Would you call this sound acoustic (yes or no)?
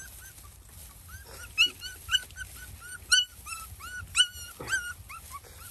yes